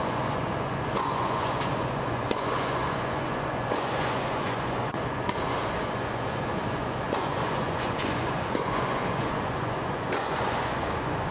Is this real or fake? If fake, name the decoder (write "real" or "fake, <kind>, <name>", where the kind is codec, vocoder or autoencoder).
fake, vocoder, Vocos